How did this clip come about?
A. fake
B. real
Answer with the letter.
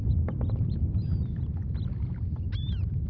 B